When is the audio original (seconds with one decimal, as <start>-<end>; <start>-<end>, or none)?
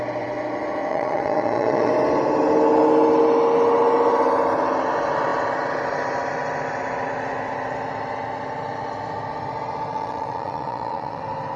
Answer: 0.0-0.9; 1.9-9.9; 11.2-11.6